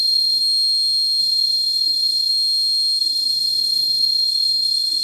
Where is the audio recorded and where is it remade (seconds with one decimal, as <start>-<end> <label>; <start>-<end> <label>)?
0.0-0.4 remade; 0.4-1.2 recorded; 1.2-2.3 remade; 2.3-3.0 recorded; 3.0-5.0 remade